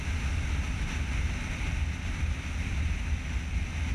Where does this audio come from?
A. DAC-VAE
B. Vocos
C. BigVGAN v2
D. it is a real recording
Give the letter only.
D